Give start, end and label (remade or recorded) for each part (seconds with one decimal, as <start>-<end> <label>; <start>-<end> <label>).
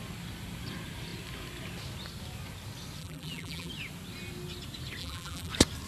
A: 0.0-3.0 recorded; 3.0-3.7 remade; 3.7-5.0 recorded; 5.0-5.5 remade; 5.5-5.9 recorded